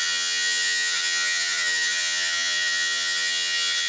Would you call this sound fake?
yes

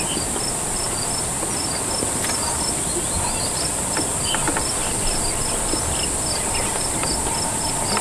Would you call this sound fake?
no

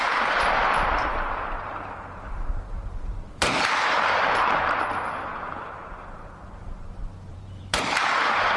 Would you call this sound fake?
yes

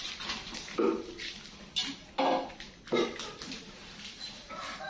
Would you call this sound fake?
no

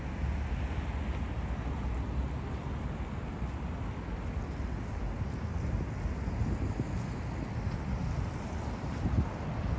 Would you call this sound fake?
no